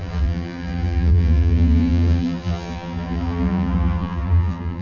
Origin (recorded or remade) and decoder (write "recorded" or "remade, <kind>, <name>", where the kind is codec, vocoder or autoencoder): remade, vocoder, BigVGAN v2